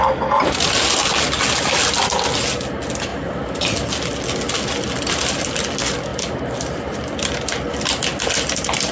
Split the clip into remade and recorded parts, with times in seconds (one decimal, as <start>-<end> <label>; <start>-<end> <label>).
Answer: 0.0-8.9 recorded